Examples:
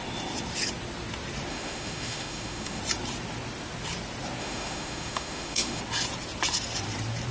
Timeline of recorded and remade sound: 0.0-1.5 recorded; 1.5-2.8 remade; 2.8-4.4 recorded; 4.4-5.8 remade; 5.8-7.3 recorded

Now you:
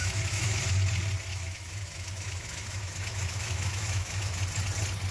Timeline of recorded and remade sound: 0.0-0.6 remade; 0.6-1.3 recorded; 1.3-4.4 remade; 4.4-5.1 recorded

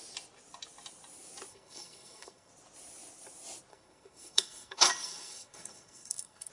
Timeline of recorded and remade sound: 0.0-1.5 recorded; 1.5-2.5 remade; 2.5-3.7 recorded; 3.7-6.5 remade

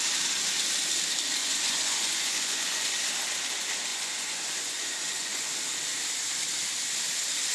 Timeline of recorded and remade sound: 0.0-1.4 recorded; 1.4-2.9 remade; 2.9-3.9 recorded; 3.9-5.5 remade; 5.5-7.5 recorded